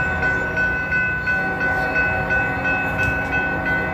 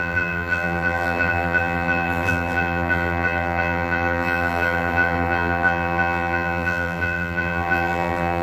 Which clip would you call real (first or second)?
first